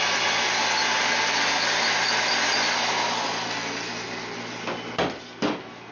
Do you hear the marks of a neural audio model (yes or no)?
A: no